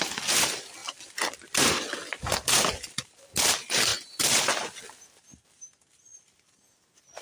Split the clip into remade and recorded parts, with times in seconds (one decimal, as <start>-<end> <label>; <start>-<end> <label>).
0.0-7.2 recorded